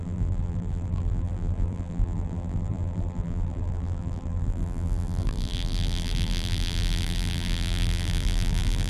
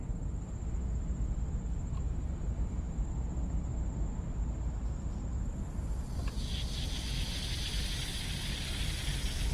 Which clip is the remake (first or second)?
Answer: first